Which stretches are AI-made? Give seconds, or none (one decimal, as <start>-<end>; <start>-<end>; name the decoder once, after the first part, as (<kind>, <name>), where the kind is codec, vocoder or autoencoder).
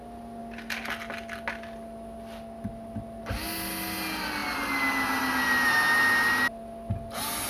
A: none